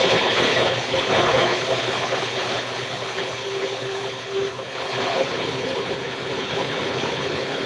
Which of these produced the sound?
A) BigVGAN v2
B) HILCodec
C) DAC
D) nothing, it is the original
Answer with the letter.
B